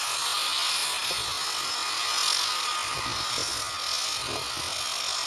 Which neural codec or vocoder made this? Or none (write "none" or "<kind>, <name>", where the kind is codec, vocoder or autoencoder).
none